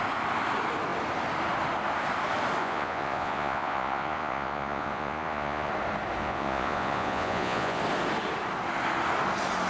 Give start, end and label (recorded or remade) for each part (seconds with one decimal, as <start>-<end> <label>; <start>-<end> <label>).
0.0-2.6 recorded; 2.6-5.7 remade; 5.7-6.2 recorded; 6.2-7.8 remade; 7.8-9.7 recorded